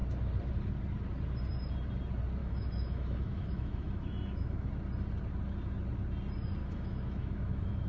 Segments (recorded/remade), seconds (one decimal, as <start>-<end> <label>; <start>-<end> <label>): 0.0-2.4 recorded; 2.4-4.7 remade; 4.7-6.6 recorded; 6.6-7.9 remade